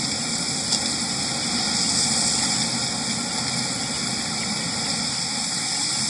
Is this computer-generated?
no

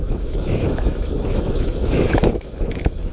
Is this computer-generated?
yes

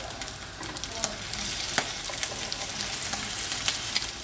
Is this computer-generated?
no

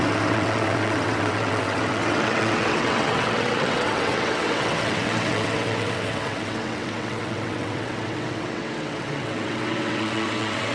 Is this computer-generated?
yes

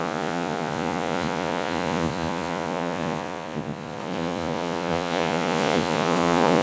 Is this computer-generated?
yes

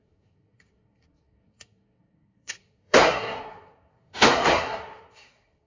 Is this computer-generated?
yes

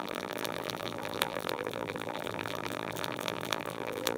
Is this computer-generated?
yes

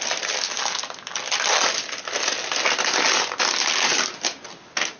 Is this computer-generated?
no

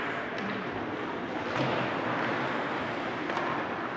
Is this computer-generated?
no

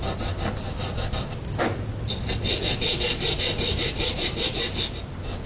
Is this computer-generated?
no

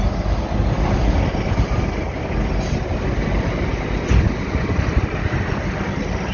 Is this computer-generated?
no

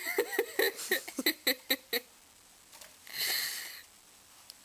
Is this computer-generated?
no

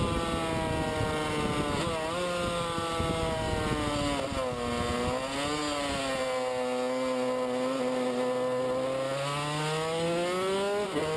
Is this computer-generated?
no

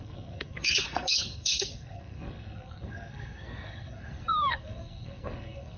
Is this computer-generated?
yes